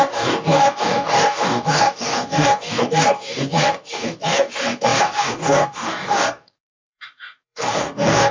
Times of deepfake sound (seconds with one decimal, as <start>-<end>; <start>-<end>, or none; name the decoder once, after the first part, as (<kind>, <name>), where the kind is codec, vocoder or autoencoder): 0.0-8.3 (codec, DAC)